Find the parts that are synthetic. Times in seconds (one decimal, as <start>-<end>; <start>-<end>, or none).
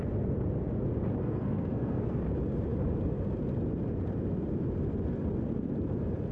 1.2-2.2